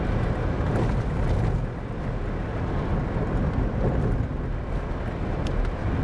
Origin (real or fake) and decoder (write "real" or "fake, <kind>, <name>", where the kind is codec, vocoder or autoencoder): real